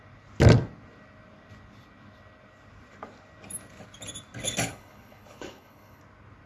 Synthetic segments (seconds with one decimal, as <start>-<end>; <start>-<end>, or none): 4.7-6.0